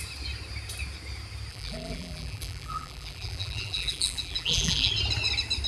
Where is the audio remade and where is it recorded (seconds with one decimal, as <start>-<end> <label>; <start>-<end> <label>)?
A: 0.0-1.5 recorded; 1.5-4.9 remade; 4.9-5.7 recorded